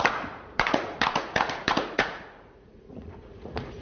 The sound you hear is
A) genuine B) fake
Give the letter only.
B